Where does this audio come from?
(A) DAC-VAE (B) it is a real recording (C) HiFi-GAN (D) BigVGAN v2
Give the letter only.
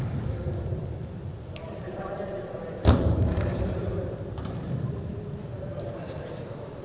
D